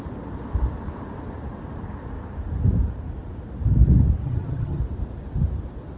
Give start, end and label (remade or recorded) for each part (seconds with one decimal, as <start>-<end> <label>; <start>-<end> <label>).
0.0-4.2 recorded; 4.2-4.8 remade; 4.8-6.0 recorded

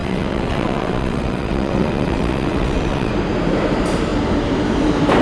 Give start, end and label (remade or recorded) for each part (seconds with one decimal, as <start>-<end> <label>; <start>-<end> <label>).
0.0-3.1 remade; 3.1-5.2 recorded